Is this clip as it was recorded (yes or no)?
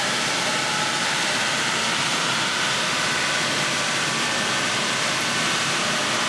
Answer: yes